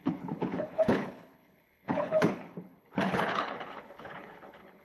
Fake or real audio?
fake